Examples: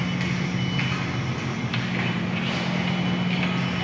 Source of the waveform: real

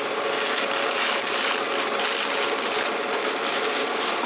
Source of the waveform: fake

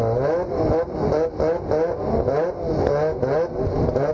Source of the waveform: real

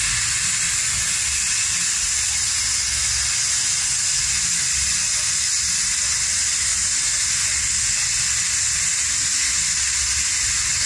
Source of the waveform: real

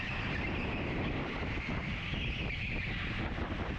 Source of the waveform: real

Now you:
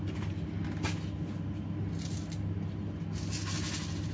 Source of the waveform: real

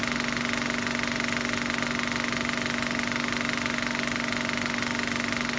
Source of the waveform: real